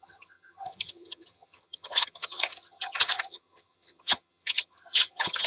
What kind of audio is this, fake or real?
fake